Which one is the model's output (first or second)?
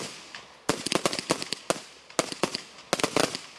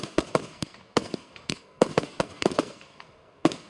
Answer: second